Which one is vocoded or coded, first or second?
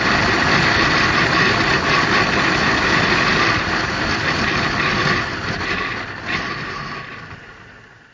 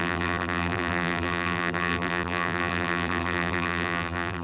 second